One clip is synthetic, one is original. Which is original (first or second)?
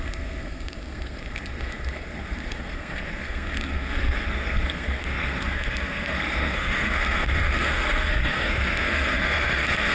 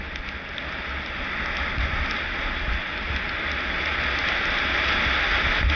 second